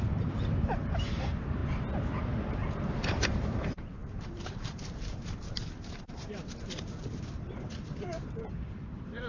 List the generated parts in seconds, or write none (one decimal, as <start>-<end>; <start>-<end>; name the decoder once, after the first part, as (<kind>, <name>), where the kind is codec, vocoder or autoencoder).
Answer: 0.0-1.6 (vocoder, BigVGAN v2); 2.2-9.3

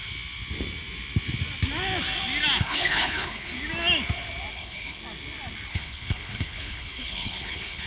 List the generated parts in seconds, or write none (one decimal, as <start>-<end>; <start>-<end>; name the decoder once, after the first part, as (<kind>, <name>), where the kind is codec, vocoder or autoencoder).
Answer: 2.6-3.5 (codec, HILCodec); 4.5-5.0; 5.7-7.9

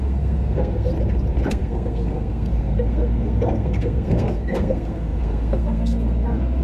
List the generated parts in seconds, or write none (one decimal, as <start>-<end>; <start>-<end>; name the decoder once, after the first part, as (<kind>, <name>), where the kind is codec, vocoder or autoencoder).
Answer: 0.0-0.9 (codec, SNAC); 1.5-6.6